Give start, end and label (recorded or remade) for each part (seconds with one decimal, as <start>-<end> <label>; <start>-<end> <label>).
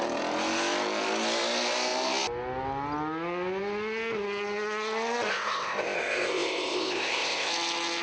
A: 0.0-5.3 recorded; 5.3-7.5 remade; 7.5-8.0 recorded